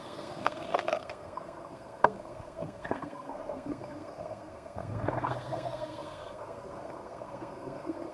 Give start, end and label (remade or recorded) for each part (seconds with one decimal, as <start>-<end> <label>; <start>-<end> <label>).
0.0-8.1 remade